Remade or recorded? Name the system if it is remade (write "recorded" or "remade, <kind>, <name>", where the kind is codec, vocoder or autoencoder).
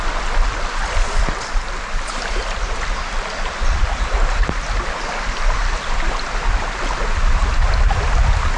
recorded